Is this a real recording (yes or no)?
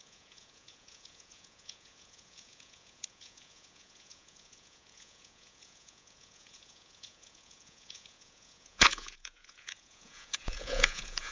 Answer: no